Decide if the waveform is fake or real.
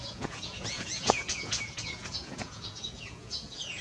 fake